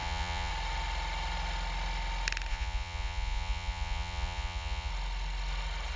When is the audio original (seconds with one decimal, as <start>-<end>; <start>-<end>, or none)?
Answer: 0.5-2.5; 4.9-6.0